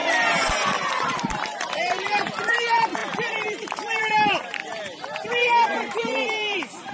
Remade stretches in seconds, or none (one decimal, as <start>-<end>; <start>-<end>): 0.9-4.6; 5.3-6.9